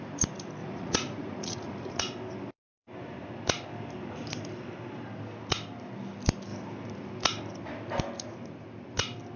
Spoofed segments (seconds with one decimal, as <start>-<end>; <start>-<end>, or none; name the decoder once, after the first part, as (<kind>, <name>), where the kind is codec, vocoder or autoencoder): 0.6-2.0 (vocoder, Vocos)